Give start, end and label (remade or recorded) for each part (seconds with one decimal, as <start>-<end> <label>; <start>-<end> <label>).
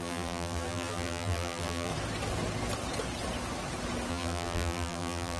0.0-1.9 remade; 1.9-4.1 recorded; 4.1-5.4 remade